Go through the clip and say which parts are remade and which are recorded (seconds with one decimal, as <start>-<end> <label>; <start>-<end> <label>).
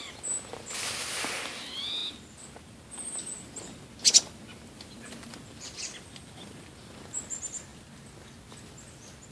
0.0-9.3 recorded